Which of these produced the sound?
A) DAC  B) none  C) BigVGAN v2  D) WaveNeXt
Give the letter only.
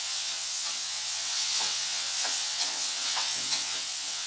D